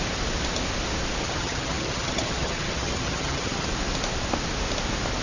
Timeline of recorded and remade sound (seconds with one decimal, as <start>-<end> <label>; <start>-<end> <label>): 0.0-1.2 recorded; 1.2-3.7 remade; 3.7-5.2 recorded

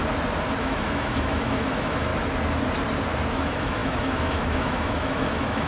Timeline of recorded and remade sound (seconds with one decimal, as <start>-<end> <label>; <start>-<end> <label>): 0.0-0.6 recorded; 0.6-2.1 remade; 2.1-3.3 recorded; 3.3-5.7 remade

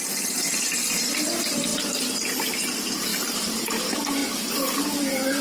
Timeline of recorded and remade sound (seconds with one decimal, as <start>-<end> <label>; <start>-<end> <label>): 0.0-4.2 remade; 4.2-4.9 recorded; 4.9-5.4 remade

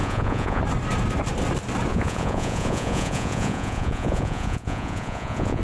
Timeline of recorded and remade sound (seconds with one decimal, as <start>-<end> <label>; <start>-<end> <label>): 0.0-0.6 remade; 0.6-1.9 recorded; 1.9-5.6 remade